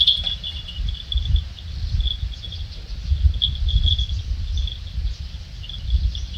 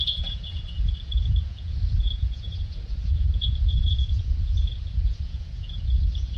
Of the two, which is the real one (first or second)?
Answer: first